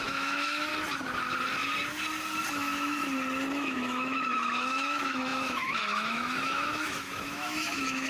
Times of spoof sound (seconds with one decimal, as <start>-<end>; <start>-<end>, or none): 0.0-0.7; 2.5-3.0; 3.5-8.1